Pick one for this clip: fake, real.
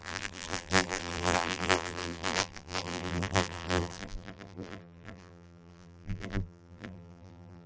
fake